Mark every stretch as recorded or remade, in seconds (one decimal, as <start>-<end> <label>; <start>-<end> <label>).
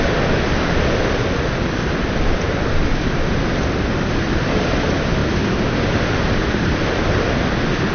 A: 0.0-7.9 recorded